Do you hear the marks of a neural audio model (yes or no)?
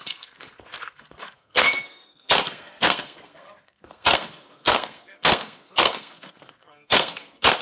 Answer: yes